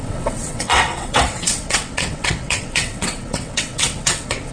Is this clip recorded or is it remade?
remade